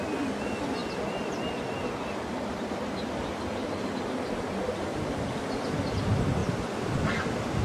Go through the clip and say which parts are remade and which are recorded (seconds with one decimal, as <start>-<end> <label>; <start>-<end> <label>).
0.0-4.9 recorded; 4.9-5.4 remade; 5.4-6.4 recorded; 6.4-7.0 remade; 7.0-7.6 recorded